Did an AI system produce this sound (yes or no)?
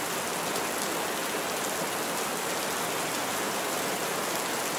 no